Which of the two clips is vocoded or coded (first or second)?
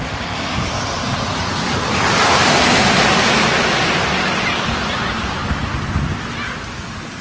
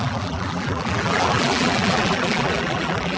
second